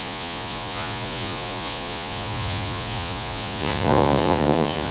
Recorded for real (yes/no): no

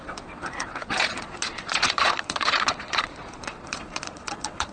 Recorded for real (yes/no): no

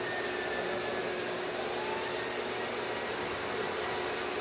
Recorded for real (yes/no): yes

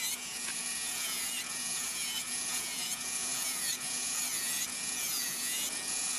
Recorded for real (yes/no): no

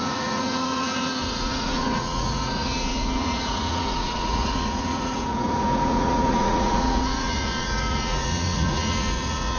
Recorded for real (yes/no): no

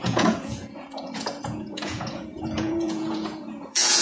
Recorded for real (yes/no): no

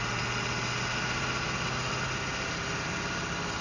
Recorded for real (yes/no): yes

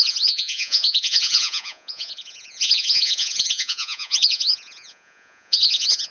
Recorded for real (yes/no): no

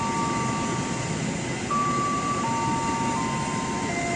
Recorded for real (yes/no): yes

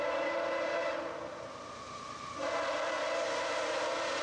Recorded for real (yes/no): yes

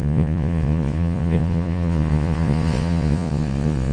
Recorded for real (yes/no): no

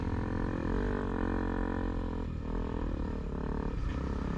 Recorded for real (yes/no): yes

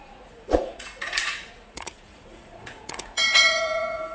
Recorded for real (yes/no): no